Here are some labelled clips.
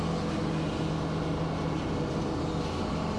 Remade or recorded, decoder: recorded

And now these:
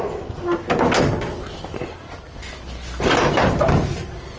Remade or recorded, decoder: recorded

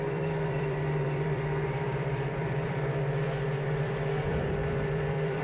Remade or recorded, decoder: remade, vocoder, BigVGAN v2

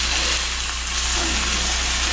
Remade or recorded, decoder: recorded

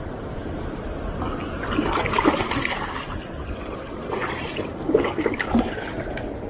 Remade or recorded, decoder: recorded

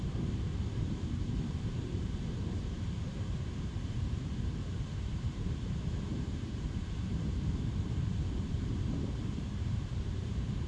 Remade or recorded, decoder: remade, vocoder, BigVGAN v2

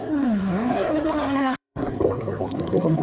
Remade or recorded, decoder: remade, codec, SNAC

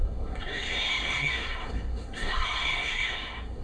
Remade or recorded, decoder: remade, codec, SNAC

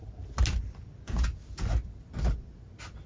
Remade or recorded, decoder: recorded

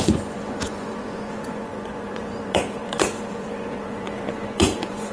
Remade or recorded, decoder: remade, vocoder, Vocos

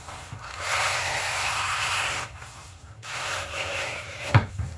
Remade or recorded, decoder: remade, codec, SNAC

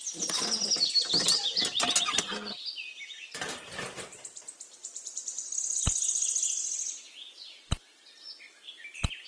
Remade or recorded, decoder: recorded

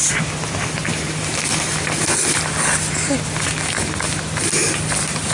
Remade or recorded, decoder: recorded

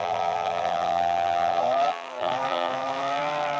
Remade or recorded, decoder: remade, vocoder, BigVGAN v2